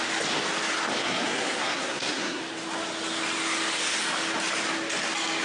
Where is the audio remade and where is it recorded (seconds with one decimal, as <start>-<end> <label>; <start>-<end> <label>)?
0.0-1.0 recorded; 1.0-2.4 remade; 2.4-5.4 recorded